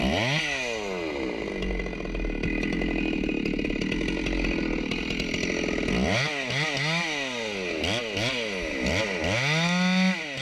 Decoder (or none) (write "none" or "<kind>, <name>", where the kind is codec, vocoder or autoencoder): none